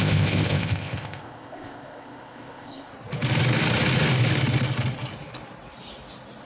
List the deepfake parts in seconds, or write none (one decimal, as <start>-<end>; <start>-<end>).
0.0-2.9